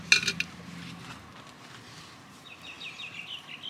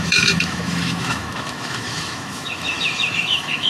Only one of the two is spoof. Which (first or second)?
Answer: second